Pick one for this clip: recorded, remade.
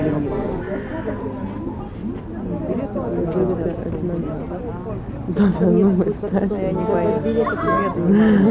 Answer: recorded